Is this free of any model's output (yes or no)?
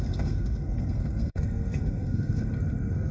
no